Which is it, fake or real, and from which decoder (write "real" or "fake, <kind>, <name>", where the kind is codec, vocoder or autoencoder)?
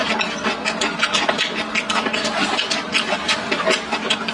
real